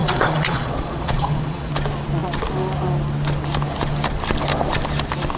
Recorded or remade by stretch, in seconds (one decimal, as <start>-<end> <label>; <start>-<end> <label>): 0.0-1.7 remade; 1.7-5.4 recorded